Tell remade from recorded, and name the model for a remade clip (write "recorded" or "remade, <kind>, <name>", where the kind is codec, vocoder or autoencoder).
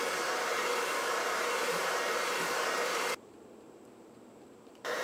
remade, vocoder, BigVGAN v2